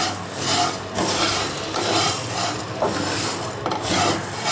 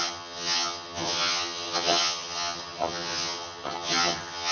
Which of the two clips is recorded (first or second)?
first